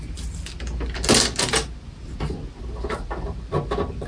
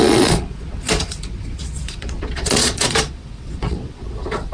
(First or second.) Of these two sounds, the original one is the first